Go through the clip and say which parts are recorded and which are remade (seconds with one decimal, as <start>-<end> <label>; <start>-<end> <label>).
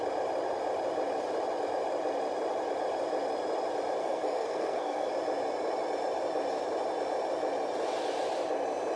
0.0-4.0 recorded; 4.0-5.1 remade; 5.1-9.0 recorded